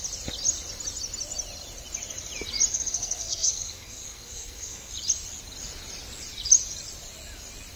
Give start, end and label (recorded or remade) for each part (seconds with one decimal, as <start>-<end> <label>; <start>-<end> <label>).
0.0-2.7 recorded; 2.7-4.9 remade; 4.9-7.8 recorded